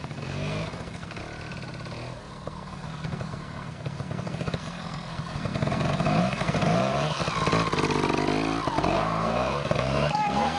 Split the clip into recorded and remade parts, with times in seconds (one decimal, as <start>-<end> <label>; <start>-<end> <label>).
0.0-1.2 remade; 1.2-2.2 recorded; 2.2-7.2 remade; 7.2-8.8 recorded; 8.8-10.6 remade